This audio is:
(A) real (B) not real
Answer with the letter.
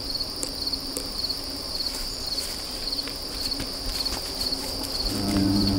B